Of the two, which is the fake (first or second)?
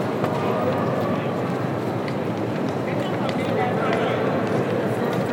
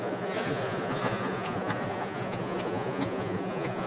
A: second